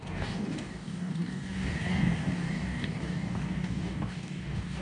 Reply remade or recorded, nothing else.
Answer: remade